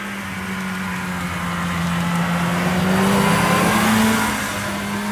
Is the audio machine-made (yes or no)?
no